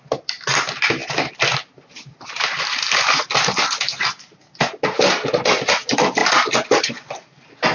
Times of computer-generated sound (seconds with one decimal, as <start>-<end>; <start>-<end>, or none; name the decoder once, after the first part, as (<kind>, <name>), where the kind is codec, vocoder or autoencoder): none